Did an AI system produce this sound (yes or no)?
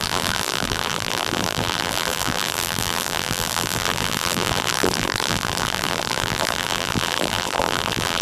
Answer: yes